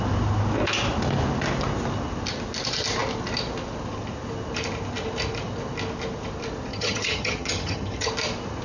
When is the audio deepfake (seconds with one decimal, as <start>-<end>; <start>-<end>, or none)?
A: 6.7-8.1